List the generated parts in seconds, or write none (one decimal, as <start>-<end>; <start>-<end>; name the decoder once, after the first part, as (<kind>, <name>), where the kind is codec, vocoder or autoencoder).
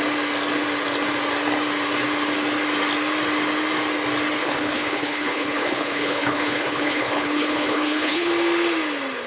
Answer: 4.4-8.3 (codec, HILCodec)